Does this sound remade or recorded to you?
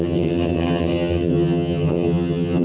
remade